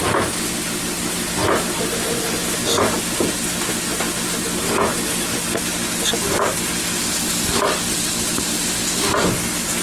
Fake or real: real